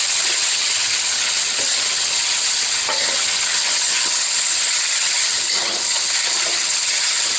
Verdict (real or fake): fake